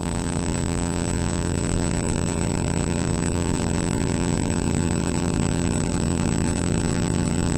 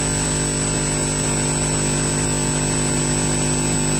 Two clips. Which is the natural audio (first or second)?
second